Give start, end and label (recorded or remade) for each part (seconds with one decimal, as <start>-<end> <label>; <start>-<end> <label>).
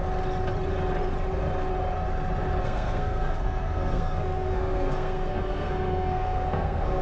0.0-2.6 recorded; 2.6-7.0 remade